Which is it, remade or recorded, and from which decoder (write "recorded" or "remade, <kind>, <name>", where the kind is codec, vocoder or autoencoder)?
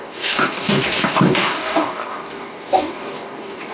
remade, codec, DAC